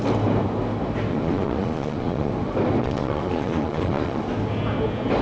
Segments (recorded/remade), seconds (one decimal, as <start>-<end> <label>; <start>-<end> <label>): 0.0-1.1 recorded; 1.1-2.3 remade; 2.3-2.8 recorded; 2.8-4.2 remade; 4.2-5.2 recorded